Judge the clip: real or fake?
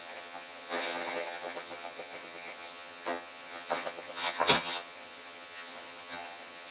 fake